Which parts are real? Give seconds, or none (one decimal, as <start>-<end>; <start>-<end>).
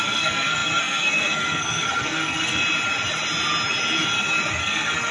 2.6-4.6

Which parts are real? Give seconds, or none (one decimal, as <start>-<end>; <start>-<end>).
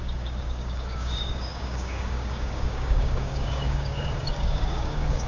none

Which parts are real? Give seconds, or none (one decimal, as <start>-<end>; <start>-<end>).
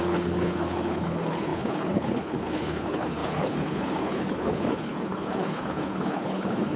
none